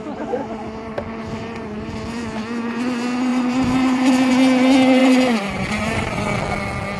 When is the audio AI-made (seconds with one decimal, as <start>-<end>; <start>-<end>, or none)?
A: 3.3-4.3; 5.0-6.2